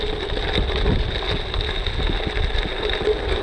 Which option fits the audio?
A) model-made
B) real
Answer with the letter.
B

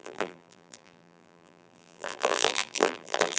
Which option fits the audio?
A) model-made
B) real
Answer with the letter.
A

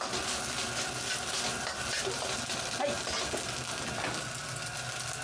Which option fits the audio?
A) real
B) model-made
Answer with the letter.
A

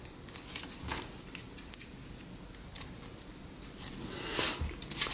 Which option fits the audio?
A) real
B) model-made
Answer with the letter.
A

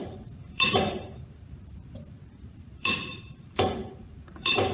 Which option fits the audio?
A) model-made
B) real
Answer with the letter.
A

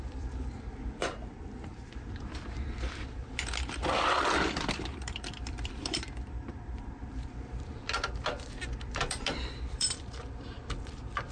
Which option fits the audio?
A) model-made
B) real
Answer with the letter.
A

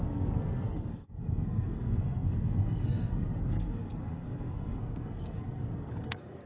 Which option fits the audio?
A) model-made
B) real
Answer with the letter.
A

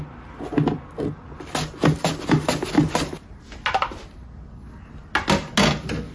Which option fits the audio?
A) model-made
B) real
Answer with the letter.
B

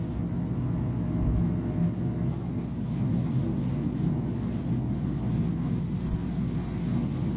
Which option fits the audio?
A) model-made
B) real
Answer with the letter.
B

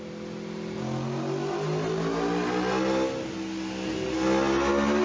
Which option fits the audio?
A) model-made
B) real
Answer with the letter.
B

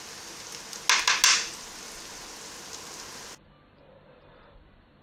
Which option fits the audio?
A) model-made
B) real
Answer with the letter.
B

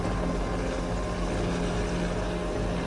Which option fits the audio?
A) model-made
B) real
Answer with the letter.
B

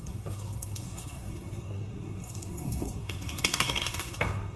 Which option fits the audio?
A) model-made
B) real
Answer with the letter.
A